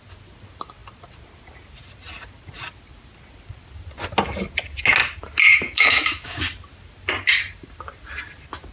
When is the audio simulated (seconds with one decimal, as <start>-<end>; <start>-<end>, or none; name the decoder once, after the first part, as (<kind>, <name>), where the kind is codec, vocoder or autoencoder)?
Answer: 5.5-6.4 (autoencoder, DAC-VAE)